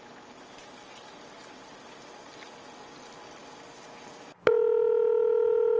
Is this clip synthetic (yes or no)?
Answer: no